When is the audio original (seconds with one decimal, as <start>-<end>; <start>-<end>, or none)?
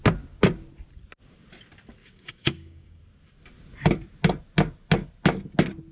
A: 0.0-2.0; 3.0-5.9